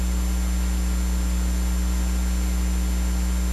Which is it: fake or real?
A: real